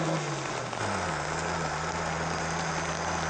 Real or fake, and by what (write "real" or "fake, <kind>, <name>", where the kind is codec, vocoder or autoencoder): real